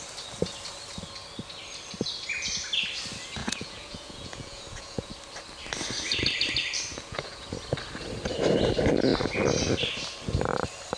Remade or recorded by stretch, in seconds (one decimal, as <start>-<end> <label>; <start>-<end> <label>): 0.0-3.4 recorded; 3.4-5.1 remade; 5.1-6.9 recorded; 6.9-7.5 remade; 7.5-11.0 recorded